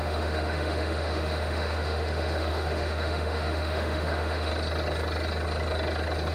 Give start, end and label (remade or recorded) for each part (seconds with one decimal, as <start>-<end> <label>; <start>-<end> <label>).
0.0-4.5 remade; 4.5-6.3 recorded